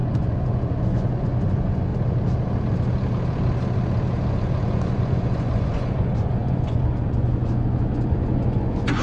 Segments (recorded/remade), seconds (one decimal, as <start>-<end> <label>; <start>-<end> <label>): 0.0-1.9 remade; 1.9-4.3 recorded; 4.3-9.0 remade